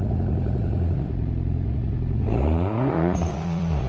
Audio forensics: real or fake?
fake